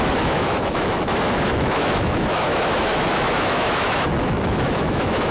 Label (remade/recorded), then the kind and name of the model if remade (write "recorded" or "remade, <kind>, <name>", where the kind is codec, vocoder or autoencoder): remade, autoencoder, DAC-VAE